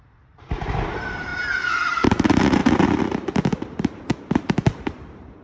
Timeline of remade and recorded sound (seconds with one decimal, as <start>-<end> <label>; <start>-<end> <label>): 0.0-1.3 remade; 1.3-1.9 recorded; 1.9-2.6 remade; 2.6-3.6 recorded; 3.6-4.1 remade; 4.1-4.8 recorded; 4.8-5.4 remade